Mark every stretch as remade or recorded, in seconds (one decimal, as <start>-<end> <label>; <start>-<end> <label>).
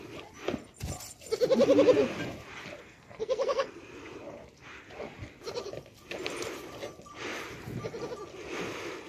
0.0-2.8 recorded; 2.8-3.8 remade; 3.8-9.1 recorded